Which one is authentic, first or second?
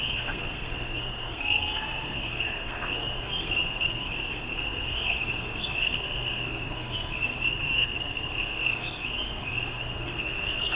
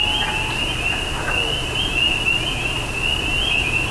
second